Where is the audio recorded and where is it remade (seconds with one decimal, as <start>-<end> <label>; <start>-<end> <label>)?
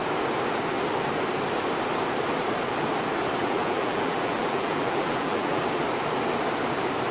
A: 0.0-3.4 recorded; 3.4-5.6 remade; 5.6-7.1 recorded